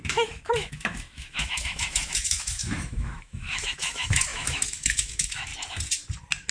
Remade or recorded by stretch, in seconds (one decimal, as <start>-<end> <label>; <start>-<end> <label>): 0.0-5.5 remade; 5.5-6.5 recorded